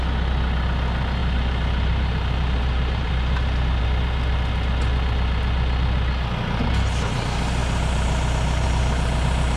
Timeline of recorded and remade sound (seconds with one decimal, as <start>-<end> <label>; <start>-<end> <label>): 0.0-1.2 recorded; 1.2-3.8 remade; 3.8-7.6 recorded; 7.6-9.6 remade